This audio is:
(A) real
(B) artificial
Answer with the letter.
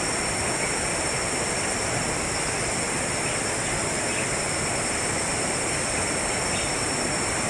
A